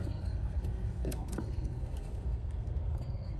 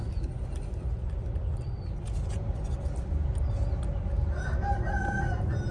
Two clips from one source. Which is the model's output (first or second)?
first